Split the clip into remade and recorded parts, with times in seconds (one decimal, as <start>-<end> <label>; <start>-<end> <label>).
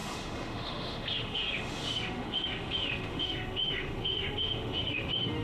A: 0.0-5.4 remade